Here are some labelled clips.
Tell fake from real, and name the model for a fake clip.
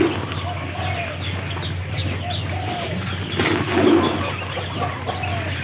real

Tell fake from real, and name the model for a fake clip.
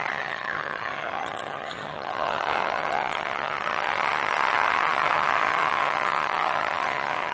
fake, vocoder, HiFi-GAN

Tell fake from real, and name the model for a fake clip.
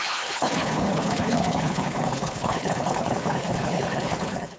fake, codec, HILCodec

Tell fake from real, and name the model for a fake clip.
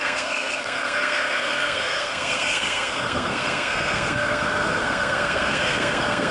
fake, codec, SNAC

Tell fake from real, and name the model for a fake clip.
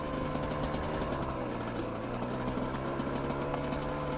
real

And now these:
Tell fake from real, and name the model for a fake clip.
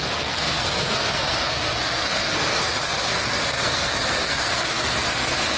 fake, codec, SNAC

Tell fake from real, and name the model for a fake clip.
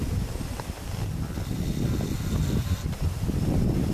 real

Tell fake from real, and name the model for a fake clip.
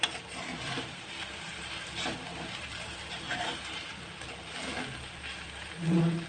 fake, vocoder, BigVGAN v2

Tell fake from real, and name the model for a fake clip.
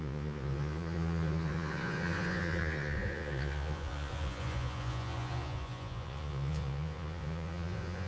fake, vocoder, Vocos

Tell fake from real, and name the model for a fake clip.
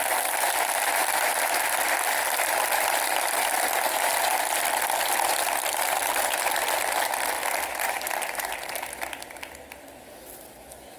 real